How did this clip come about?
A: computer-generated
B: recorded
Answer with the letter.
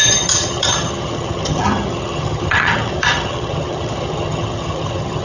A